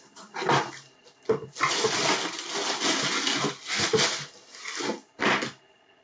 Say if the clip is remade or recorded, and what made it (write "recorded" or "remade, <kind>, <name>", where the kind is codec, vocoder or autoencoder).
recorded